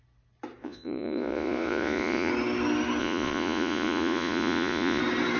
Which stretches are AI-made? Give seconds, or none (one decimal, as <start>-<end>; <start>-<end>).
0.6-2.3; 3.0-5.0